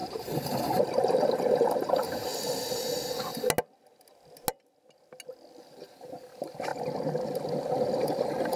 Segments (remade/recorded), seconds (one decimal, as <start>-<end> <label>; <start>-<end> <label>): 0.0-2.3 remade; 2.3-5.6 recorded; 5.6-6.7 remade; 6.7-8.0 recorded; 8.0-8.6 remade